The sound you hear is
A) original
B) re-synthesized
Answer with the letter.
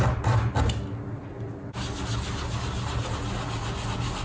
A